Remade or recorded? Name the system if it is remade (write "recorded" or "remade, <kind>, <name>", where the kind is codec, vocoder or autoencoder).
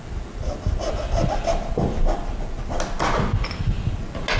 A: recorded